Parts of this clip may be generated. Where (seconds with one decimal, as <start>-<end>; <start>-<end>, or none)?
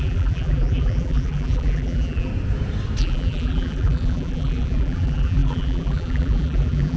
0.0-2.3; 3.0-7.0